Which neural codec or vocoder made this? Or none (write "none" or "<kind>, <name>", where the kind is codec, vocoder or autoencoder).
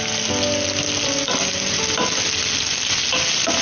none